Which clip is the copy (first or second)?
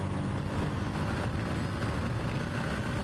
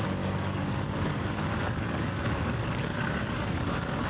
second